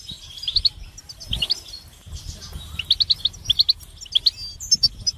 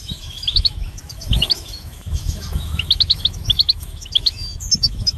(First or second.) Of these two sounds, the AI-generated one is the second